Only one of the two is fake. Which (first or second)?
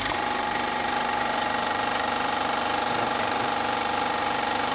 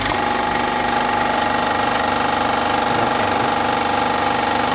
first